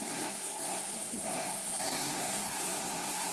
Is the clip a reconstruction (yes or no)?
yes